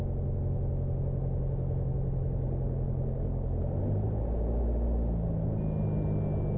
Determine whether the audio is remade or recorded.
recorded